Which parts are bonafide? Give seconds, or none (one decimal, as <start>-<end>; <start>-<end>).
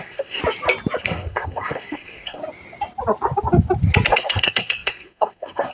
0.4-1.0; 2.4-4.1